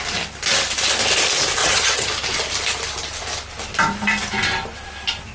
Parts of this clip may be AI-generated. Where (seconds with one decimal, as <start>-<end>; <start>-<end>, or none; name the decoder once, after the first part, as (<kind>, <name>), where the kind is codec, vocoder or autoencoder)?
1.6-2.1 (vocoder, HiFi-GAN)